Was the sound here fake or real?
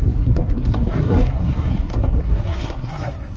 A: fake